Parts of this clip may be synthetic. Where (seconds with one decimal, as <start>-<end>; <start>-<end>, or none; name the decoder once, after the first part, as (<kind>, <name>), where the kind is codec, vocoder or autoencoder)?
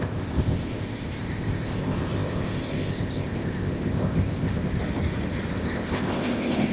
0.0-4.8 (codec, ZipCodec); 5.6-6.7